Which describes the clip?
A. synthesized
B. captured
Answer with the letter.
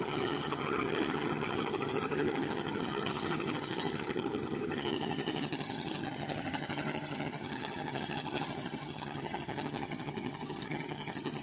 A